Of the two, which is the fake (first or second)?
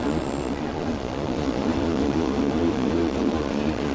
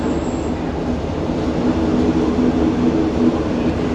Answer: first